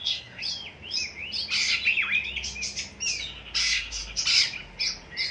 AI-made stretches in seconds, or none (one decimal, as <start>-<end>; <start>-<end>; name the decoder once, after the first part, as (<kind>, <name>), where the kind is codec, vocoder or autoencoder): 0.0-0.4 (codec, SNAC); 3.6-4.0

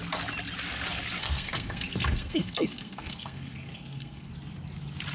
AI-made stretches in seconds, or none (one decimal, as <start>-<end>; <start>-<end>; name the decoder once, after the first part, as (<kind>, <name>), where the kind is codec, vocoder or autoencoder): 1.2-4.3 (codec, SNAC)

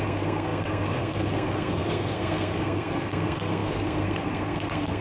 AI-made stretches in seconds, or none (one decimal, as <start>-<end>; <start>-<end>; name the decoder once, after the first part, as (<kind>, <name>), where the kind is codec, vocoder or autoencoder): 0.0-5.0 (codec, SNAC)

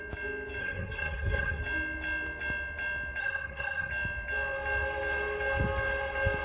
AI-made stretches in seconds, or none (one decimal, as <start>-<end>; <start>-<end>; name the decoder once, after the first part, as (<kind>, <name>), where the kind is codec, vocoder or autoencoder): 0.6-1.6 (codec, SNAC); 3.2-3.9

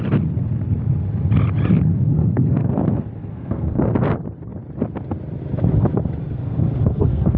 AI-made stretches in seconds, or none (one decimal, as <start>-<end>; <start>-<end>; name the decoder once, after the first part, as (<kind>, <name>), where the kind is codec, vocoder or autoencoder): 1.9-2.8 (codec, SNAC); 3.3-3.9; 6.2-7.4